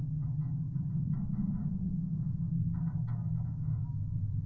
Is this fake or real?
fake